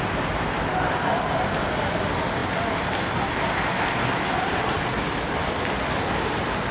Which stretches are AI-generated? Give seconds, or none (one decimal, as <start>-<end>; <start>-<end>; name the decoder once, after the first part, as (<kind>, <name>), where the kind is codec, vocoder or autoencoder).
none